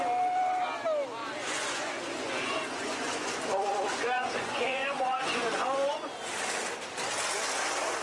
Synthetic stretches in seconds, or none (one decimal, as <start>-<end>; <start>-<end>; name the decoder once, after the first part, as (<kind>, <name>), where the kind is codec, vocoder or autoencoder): 1.2-3.4 (vocoder, Vocos); 3.9-6.3